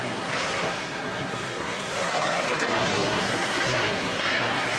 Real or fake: fake